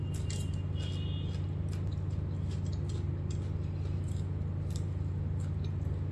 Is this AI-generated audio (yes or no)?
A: no